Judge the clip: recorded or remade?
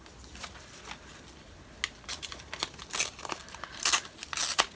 recorded